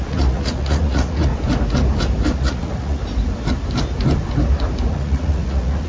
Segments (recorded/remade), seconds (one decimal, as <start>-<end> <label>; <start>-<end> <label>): 0.0-1.3 remade; 1.3-2.4 recorded; 2.4-3.0 remade; 3.0-4.9 recorded; 4.9-5.9 remade

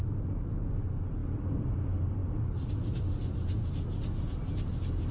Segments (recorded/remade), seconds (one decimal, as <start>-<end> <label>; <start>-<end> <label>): 0.0-5.1 recorded

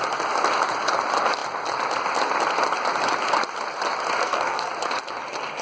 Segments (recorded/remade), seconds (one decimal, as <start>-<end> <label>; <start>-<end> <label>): 0.0-4.2 recorded; 4.2-4.7 remade; 4.7-5.6 recorded

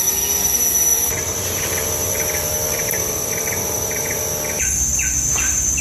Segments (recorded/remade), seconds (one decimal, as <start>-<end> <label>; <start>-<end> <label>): 0.0-0.9 recorded; 0.9-4.4 remade; 4.4-5.8 recorded

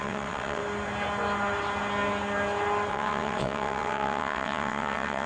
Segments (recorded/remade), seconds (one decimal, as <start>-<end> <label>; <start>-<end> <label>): 0.0-0.6 remade; 0.6-2.9 recorded; 2.9-5.3 remade

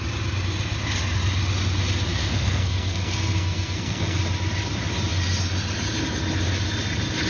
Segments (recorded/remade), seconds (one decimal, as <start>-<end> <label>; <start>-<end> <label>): 0.0-2.1 recorded; 2.1-4.2 remade; 4.2-7.3 recorded

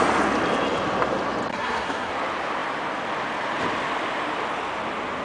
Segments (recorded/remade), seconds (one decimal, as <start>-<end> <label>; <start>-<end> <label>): 0.0-1.5 recorded; 1.5-2.1 remade; 2.1-5.2 recorded